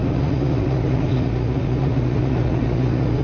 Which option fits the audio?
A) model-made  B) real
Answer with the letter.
A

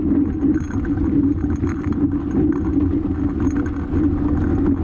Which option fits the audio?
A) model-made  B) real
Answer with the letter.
B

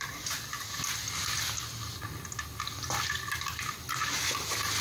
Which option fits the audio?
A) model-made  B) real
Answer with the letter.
B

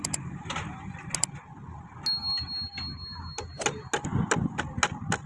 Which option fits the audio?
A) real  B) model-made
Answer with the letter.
A